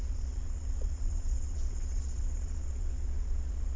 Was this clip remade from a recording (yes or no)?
yes